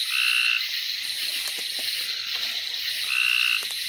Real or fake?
real